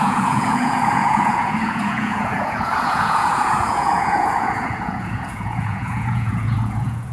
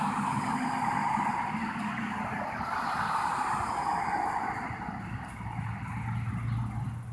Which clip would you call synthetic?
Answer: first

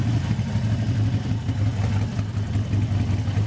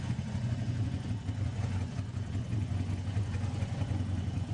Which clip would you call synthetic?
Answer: second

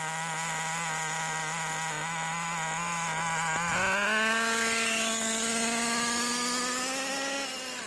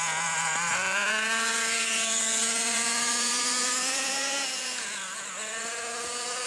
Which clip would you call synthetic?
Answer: second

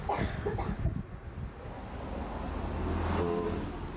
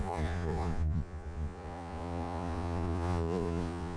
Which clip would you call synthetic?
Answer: second